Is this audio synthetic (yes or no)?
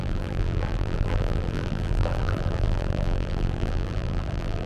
yes